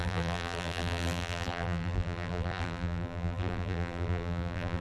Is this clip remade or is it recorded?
remade